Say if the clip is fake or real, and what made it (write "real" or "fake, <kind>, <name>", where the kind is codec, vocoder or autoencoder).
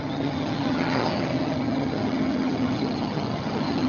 fake, vocoder, HiFi-GAN